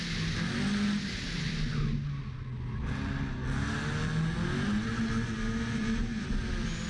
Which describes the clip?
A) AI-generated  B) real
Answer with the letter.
B